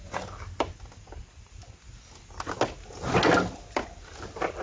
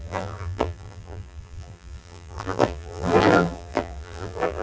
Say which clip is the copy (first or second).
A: second